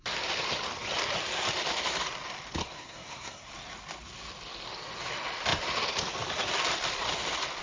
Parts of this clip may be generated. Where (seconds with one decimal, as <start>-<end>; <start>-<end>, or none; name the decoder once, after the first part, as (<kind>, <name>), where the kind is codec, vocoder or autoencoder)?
2.6-3.5 (codec, SNAC)